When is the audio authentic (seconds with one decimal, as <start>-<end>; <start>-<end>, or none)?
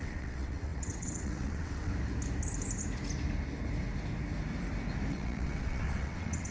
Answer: 1.9-5.1